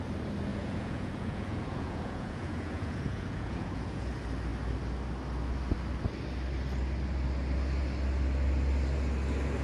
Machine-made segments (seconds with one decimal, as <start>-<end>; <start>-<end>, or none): 0.5-4.1